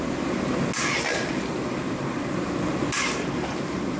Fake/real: real